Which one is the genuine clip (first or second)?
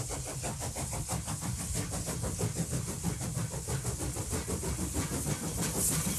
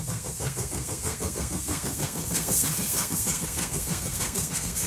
first